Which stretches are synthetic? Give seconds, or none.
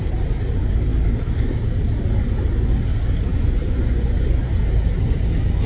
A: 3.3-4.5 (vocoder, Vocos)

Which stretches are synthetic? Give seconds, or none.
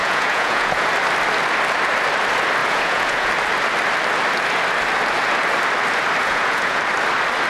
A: 0.0-0.9 (vocoder, Vocos); 2.6-3.3; 6.2-6.8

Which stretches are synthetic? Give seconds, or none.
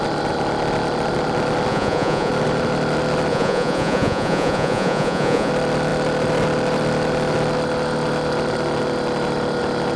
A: 1.7-2.3 (vocoder, Vocos); 3.3-5.5